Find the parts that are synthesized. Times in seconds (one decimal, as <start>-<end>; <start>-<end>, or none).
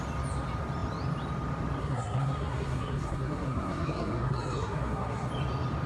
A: 1.8-5.3